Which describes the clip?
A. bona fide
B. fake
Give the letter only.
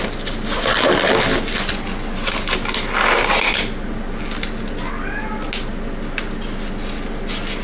A